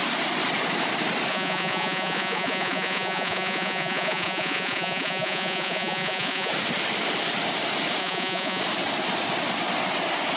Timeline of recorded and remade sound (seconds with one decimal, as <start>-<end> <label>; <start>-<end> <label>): 0.0-1.3 recorded; 1.3-6.5 remade; 6.5-8.0 recorded; 8.0-8.6 remade; 8.6-10.4 recorded

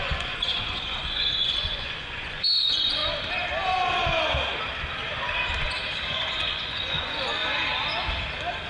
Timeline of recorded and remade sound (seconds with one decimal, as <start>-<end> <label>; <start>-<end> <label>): 0.0-3.0 remade; 3.0-6.1 recorded; 6.1-7.4 remade; 7.4-8.7 recorded

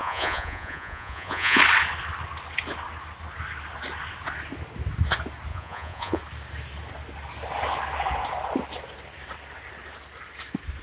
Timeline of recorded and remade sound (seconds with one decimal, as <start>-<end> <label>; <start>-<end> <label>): 0.0-1.6 remade; 1.6-5.5 recorded; 5.5-6.2 remade; 6.2-10.8 recorded